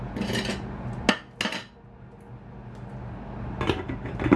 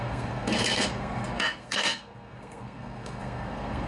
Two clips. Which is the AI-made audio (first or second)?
second